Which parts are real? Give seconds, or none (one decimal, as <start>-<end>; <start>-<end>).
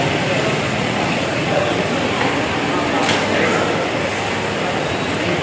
0.0-0.8; 1.6-5.4